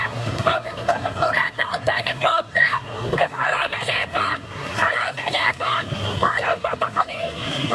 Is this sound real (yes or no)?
no